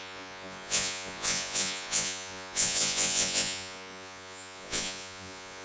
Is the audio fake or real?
fake